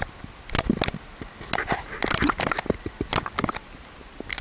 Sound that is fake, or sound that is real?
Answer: real